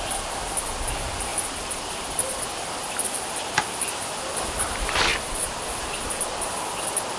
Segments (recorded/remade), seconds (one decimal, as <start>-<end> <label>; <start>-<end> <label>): 0.0-5.1 recorded; 5.1-5.8 remade; 5.8-7.2 recorded